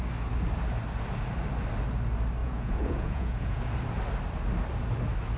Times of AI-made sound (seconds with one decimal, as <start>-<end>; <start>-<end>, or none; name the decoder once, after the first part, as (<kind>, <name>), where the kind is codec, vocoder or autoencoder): 2.4-3.6 (vocoder, Vocos)